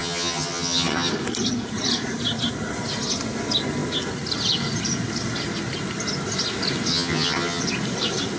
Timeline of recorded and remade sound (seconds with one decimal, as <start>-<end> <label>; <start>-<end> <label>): 0.0-1.1 remade; 1.1-6.9 recorded; 6.9-7.6 remade; 7.6-8.4 recorded